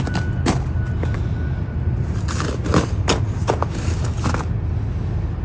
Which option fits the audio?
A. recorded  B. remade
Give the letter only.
A